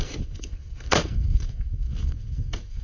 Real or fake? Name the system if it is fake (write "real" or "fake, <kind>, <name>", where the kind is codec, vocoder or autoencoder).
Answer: fake, codec, SNAC